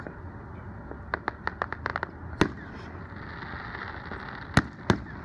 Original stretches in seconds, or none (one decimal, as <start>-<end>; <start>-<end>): 0.0-5.2